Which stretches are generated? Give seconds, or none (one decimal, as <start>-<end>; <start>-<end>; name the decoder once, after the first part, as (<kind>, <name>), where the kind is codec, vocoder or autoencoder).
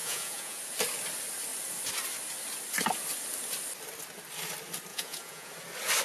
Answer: 0.0-0.6 (vocoder, Vocos); 4.9-5.5